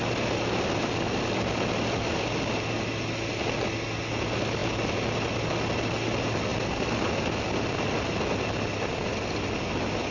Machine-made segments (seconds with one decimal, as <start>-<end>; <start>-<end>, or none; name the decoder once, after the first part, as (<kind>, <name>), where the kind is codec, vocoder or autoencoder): none